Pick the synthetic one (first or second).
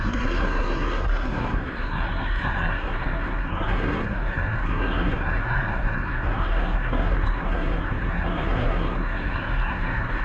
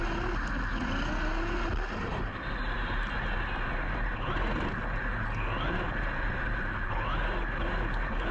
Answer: first